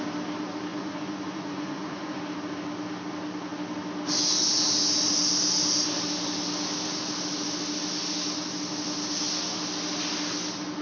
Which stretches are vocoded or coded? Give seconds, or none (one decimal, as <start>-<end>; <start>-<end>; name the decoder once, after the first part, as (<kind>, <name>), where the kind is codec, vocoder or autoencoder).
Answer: 0.7-2.2 (vocoder, Vocos)